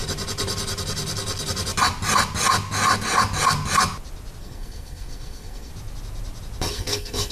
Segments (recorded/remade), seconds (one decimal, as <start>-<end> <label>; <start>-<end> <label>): 0.0-4.4 recorded; 4.4-5.7 remade; 5.7-6.7 recorded; 6.7-7.3 remade